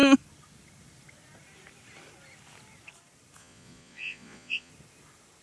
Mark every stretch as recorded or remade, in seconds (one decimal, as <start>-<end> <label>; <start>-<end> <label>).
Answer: 0.0-3.4 recorded; 3.4-4.7 remade; 4.7-5.4 recorded